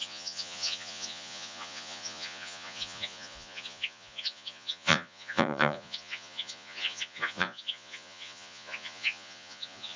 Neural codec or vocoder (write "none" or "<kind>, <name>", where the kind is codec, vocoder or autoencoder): vocoder, Vocos